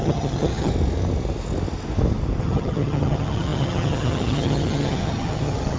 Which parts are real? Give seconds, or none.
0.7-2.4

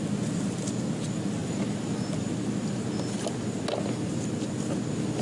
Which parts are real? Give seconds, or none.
0.0-5.2

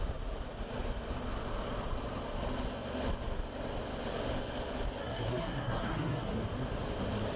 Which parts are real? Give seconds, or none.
0.0-5.0; 6.4-7.4

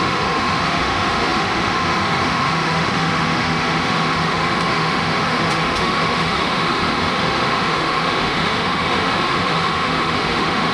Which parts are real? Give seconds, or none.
none

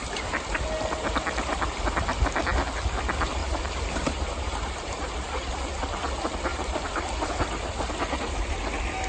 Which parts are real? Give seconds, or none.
0.6-3.4; 5.1-6.5; 7.3-9.1